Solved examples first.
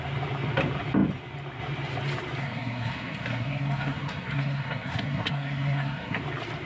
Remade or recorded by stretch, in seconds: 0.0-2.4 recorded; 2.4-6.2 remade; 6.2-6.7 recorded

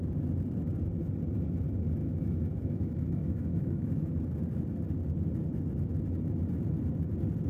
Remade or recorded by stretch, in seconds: 0.0-2.0 recorded; 2.0-4.2 remade; 4.2-7.5 recorded

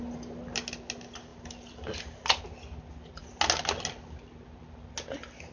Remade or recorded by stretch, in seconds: 0.0-5.5 recorded

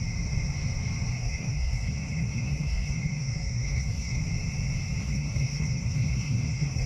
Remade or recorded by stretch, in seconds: 0.0-1.2 recorded; 1.2-4.2 remade; 4.2-5.0 recorded; 5.0-6.9 remade

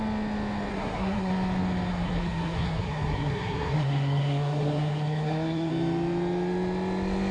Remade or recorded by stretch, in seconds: 0.0-0.7 recorded; 0.7-1.3 remade; 1.3-1.9 recorded; 1.9-5.7 remade; 5.7-7.3 recorded

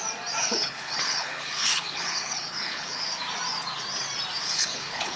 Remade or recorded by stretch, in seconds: 0.0-0.4 recorded; 0.4-3.0 remade; 3.0-4.4 recorded; 4.4-5.2 remade

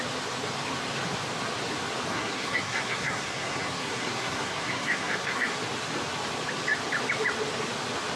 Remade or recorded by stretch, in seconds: 0.0-2.1 recorded; 2.1-5.6 remade; 5.6-8.2 recorded

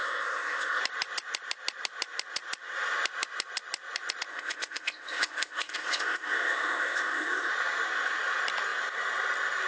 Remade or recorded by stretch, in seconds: 0.0-0.8 remade; 0.8-4.3 recorded; 4.3-7.5 remade; 7.5-9.7 recorded